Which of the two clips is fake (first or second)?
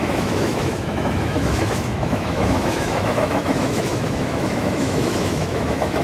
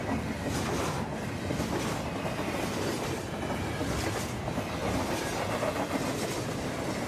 first